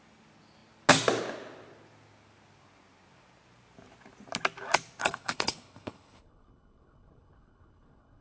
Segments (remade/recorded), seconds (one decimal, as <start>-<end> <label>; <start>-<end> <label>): 0.0-5.0 recorded; 5.0-8.2 remade